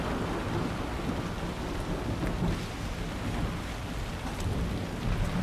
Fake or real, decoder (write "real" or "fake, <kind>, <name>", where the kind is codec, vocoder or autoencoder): real